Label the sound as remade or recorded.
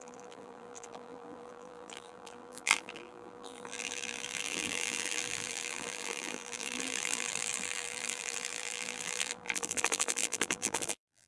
remade